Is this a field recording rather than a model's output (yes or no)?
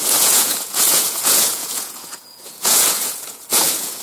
no